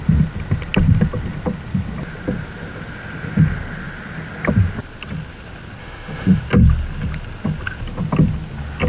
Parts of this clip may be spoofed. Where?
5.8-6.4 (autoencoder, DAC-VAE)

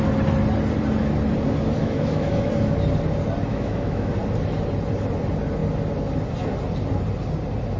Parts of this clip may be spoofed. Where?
1.8-2.5 (autoencoder, DAC-VAE); 3.5-4.1

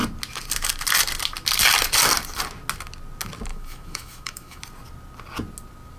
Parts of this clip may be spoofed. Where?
3.5-4.6 (autoencoder, DAC-VAE)

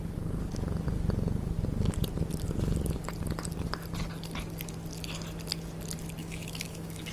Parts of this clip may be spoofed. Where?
6.2-7.1 (autoencoder, DAC-VAE)